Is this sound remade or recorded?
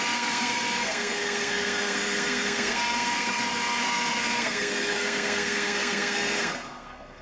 remade